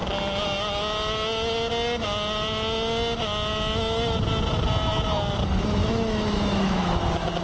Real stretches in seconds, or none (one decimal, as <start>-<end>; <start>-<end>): 0.0-5.8; 7.0-7.4